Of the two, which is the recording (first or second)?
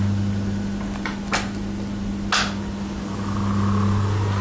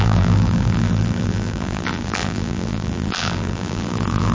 first